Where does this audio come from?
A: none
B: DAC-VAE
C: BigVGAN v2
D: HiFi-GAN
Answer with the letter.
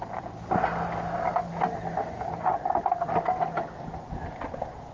A